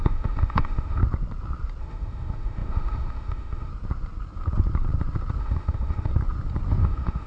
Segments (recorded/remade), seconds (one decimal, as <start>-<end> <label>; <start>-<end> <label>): 0.0-1.0 remade; 1.0-1.8 recorded; 1.8-3.7 remade; 3.7-5.4 recorded; 5.4-6.1 remade; 6.1-6.8 recorded; 6.8-7.3 remade